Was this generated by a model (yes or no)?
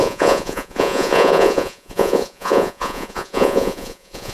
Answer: yes